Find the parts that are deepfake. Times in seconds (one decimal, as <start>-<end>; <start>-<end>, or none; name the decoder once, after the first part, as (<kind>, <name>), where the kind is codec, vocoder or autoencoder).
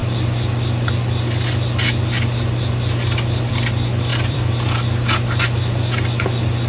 4.1-5.7 (vocoder, BigVGAN v2)